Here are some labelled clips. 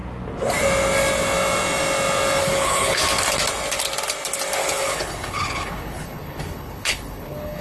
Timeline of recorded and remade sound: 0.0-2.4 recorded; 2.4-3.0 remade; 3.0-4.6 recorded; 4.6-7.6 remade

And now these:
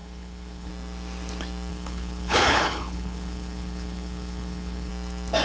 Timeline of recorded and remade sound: 0.0-0.7 remade; 0.7-1.7 recorded; 1.7-4.9 remade; 4.9-5.4 recorded

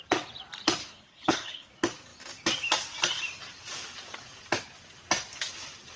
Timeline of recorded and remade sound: 0.0-0.8 recorded; 0.8-1.7 remade; 1.7-6.0 recorded

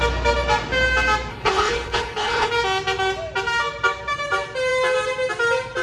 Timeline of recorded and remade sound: 0.0-1.3 recorded; 1.3-2.5 remade; 2.5-5.8 recorded

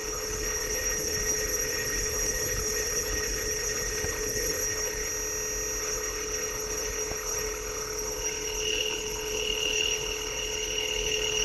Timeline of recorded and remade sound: 0.0-5.1 remade; 5.1-5.8 recorded; 5.8-11.4 remade

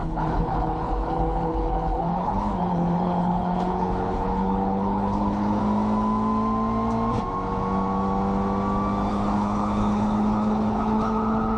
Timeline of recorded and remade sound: 0.0-5.6 remade; 5.6-9.1 recorded; 9.1-11.6 remade

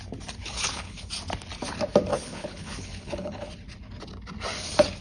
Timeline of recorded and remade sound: 0.0-0.4 recorded; 0.4-1.1 remade; 1.1-2.1 recorded; 2.1-3.5 remade; 3.5-5.0 recorded